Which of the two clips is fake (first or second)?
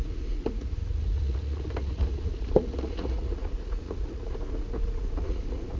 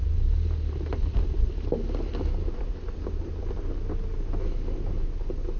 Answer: first